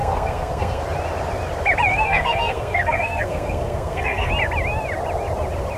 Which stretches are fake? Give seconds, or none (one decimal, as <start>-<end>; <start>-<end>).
0.0-0.8; 1.9-4.3